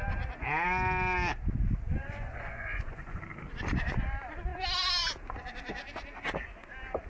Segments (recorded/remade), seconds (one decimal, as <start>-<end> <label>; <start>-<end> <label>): 0.0-1.9 recorded; 1.9-3.2 remade; 3.2-7.1 recorded